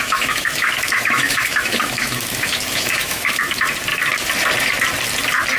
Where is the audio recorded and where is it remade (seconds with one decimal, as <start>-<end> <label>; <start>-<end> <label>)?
0.0-3.4 remade; 3.4-5.6 recorded